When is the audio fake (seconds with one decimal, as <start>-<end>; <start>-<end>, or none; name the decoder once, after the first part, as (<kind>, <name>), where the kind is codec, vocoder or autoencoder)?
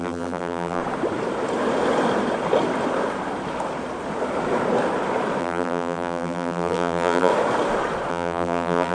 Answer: 0.0-0.8 (vocoder, BigVGAN v2); 5.4-7.3; 8.1-8.9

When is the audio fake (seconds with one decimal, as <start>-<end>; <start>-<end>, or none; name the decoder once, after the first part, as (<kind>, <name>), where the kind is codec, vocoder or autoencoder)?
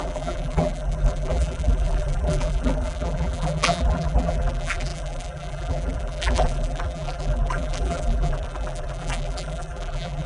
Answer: 0.0-10.3 (vocoder, BigVGAN v2)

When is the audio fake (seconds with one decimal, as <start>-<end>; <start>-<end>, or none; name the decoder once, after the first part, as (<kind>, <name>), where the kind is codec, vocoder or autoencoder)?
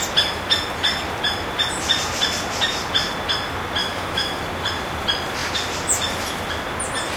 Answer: 3.8-4.4 (autoencoder, DAC-VAE)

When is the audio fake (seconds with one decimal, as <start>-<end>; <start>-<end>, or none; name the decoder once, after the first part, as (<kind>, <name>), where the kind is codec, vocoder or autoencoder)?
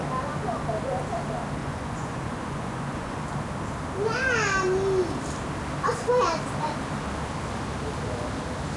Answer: 1.6-3.2 (vocoder, Vocos)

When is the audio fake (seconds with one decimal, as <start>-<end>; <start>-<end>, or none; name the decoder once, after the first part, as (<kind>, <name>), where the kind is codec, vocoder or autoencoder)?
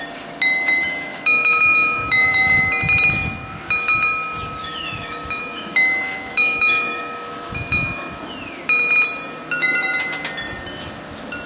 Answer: 1.1-2.6 (autoencoder, DAC-VAE); 4.6-8.2